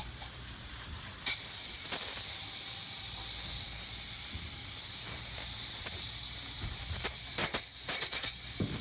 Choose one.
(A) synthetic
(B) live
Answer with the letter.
A